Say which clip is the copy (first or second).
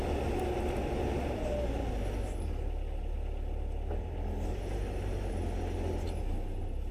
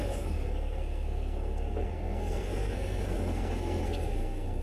second